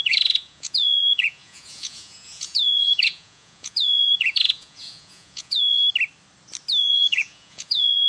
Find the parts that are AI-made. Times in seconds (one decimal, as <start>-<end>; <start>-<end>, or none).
0.0-5.8; 6.8-8.1